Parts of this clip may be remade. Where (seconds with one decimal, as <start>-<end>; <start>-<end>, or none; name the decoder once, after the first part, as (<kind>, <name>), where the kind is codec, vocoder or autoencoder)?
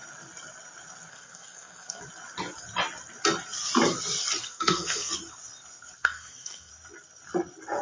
1.1-2.0 (codec, SNAC); 4.4-5.1; 6.0-6.7